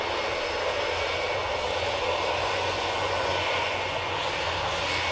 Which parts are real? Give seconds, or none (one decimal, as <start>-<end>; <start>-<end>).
0.0-2.4; 4.3-5.1